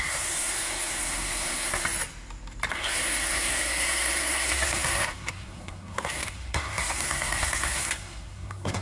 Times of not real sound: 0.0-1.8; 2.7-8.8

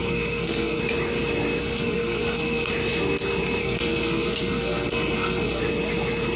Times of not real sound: 0.0-0.8; 1.6-2.7; 3.6-5.6

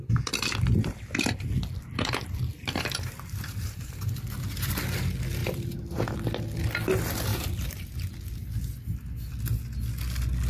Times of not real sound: 2.5-4.8; 5.4-6.2; 7.3-8.1

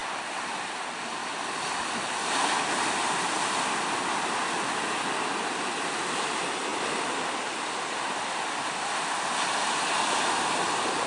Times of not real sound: none